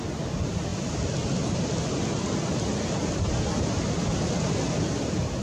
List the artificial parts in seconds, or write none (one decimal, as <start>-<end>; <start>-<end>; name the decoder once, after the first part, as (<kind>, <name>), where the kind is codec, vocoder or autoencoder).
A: none